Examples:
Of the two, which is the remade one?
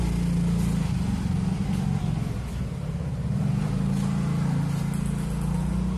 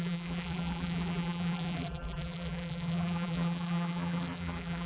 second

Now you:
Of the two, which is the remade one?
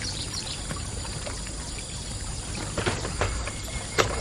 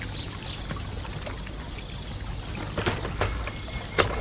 first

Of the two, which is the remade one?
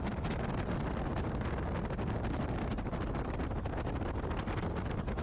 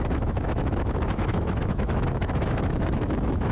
second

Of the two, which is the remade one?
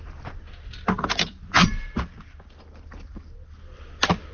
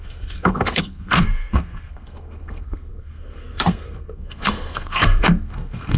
second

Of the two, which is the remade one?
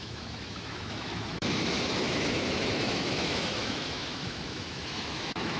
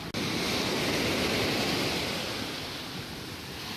first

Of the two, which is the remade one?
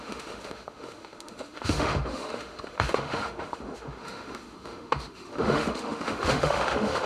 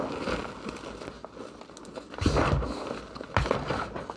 first